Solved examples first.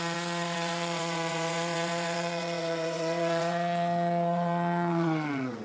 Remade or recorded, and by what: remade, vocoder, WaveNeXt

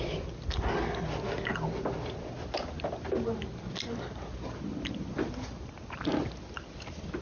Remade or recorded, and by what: recorded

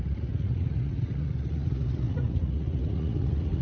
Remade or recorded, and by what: remade, vocoder, Vocos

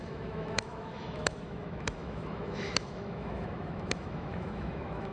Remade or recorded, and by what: remade, autoencoder, DAC-VAE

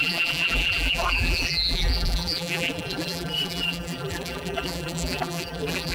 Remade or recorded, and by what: remade, vocoder, BigVGAN v2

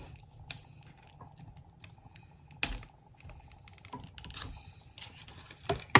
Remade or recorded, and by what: recorded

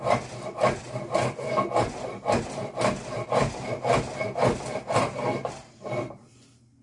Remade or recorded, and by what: recorded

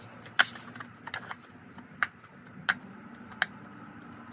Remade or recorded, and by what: recorded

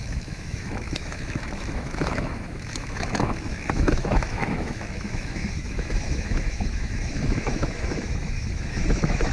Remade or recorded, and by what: remade, autoencoder, DAC-VAE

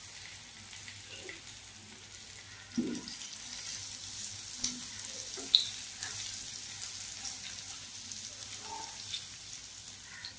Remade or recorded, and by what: recorded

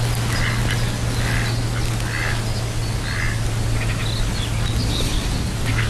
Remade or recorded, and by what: recorded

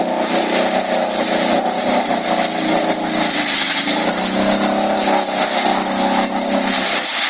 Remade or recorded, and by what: recorded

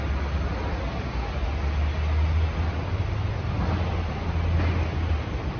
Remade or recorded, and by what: recorded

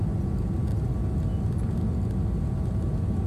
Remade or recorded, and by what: recorded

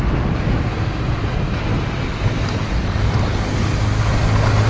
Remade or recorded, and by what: recorded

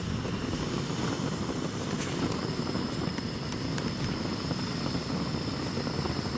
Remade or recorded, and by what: recorded